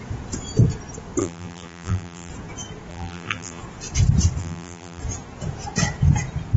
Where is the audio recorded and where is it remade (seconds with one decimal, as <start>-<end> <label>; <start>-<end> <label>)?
0.0-1.2 recorded; 1.2-2.3 remade; 2.3-2.9 recorded; 2.9-3.6 remade; 3.6-4.4 recorded; 4.4-5.0 remade; 5.0-6.6 recorded